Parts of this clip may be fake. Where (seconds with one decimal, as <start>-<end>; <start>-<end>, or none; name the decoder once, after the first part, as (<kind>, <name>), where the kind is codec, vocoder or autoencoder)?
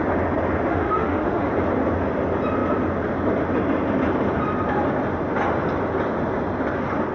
0.7-1.5 (autoencoder, DAC-VAE)